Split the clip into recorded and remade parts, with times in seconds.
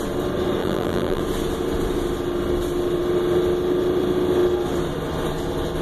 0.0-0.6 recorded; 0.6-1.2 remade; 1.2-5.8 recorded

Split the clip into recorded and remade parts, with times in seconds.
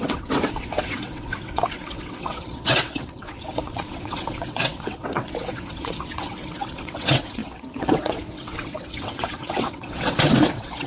0.0-10.9 remade